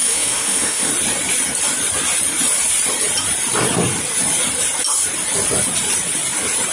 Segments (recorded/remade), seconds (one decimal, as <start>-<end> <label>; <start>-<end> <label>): 0.0-0.9 remade; 0.9-6.7 recorded

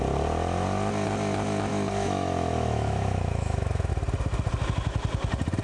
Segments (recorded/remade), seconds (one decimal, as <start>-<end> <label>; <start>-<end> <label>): 0.0-1.7 recorded; 1.7-3.9 remade; 3.9-5.6 recorded